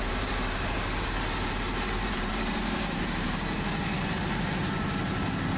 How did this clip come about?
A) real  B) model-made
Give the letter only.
B